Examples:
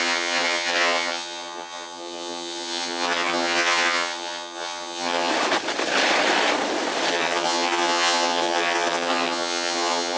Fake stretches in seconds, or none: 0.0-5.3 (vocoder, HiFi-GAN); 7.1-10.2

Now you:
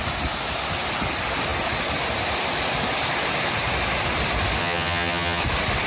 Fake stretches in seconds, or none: 4.6-5.4 (vocoder, HiFi-GAN)

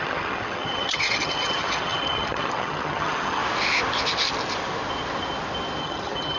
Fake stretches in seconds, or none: 0.0-3.4 (vocoder, HiFi-GAN); 5.8-6.4

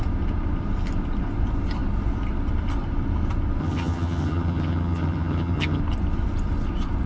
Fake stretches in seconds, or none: 3.6-5.8 (vocoder, HiFi-GAN)

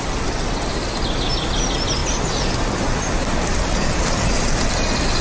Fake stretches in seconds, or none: none

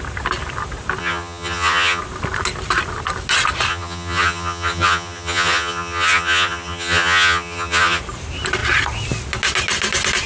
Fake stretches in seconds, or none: 1.0-2.0 (vocoder, HiFi-GAN); 3.7-8.0

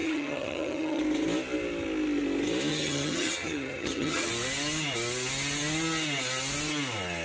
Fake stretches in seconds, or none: 0.0-1.0 (vocoder, HiFi-GAN); 2.7-4.3

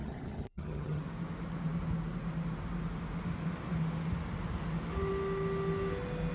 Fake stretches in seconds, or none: 0.0-1.0 (vocoder, HiFi-GAN)